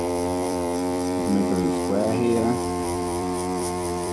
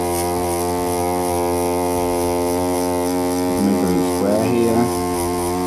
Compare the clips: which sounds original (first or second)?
second